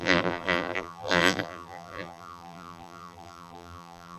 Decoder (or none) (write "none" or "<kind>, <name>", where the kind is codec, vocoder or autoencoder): vocoder, BigVGAN v2